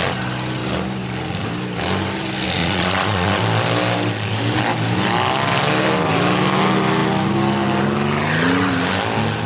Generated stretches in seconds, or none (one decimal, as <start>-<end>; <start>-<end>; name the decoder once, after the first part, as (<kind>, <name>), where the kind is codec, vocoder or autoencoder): 2.6-3.4 (vocoder, Vocos)